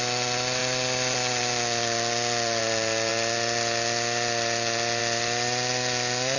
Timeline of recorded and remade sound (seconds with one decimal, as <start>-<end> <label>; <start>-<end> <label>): 0.0-6.4 recorded